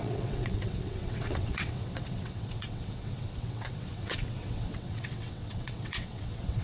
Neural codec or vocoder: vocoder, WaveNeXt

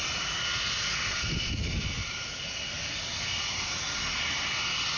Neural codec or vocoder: none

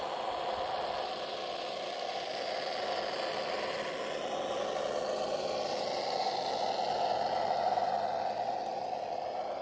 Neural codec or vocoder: none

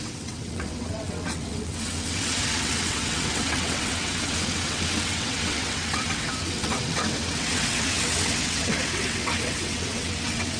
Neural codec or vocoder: vocoder, WaveNeXt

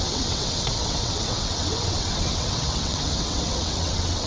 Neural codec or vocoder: vocoder, WaveNeXt